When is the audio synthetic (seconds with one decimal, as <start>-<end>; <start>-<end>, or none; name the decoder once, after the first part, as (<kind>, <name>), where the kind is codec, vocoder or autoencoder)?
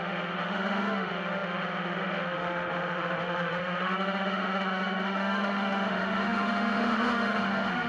0.0-7.9 (autoencoder, DAC-VAE)